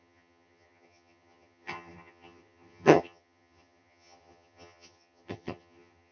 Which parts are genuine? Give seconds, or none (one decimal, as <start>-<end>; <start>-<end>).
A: none